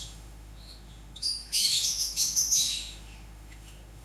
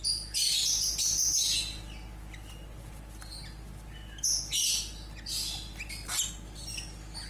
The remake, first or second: first